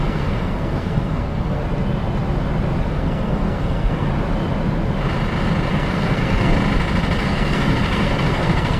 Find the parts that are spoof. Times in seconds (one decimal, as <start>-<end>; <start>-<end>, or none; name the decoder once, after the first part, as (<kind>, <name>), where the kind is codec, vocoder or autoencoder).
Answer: 0.0-1.6 (codec, SNAC); 2.9-4.1; 5.7-6.5; 7.2-8.8